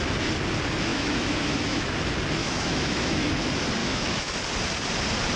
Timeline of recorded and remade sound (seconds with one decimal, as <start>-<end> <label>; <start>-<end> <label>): 0.0-0.9 recorded; 0.9-1.9 remade; 1.9-2.4 recorded; 2.4-3.3 remade; 3.3-3.8 recorded; 3.8-4.4 remade; 4.4-5.4 recorded